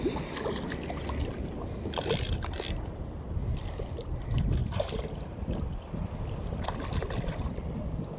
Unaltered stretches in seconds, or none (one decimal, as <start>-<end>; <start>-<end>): 0.0-4.6; 6.1-8.2